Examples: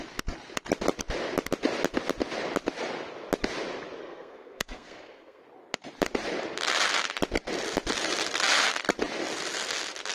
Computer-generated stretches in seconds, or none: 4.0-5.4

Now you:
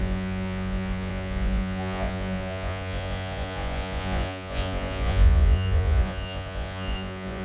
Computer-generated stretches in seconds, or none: 0.0-7.4

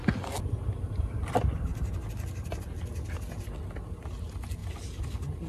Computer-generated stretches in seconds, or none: none

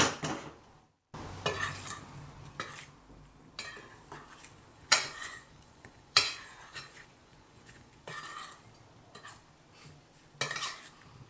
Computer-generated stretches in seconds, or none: 4.7-8.1

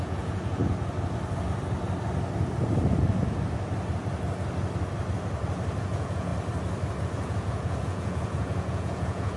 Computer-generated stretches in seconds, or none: 0.0-0.6; 5.8-6.3; 7.0-9.4

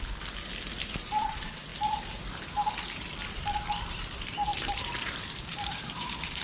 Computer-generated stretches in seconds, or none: 4.5-6.4

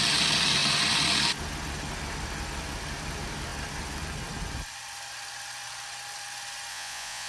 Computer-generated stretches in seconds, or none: 6.7-7.3